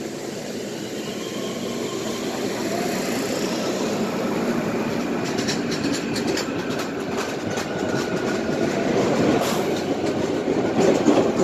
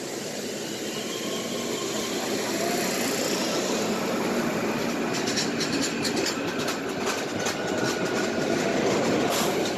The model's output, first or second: first